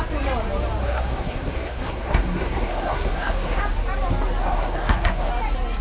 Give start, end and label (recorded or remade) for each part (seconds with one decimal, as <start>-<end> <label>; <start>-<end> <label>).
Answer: 0.0-0.8 recorded; 0.8-3.6 remade; 3.6-4.4 recorded; 4.4-5.3 remade; 5.3-5.8 recorded